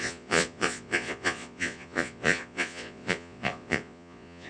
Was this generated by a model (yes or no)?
yes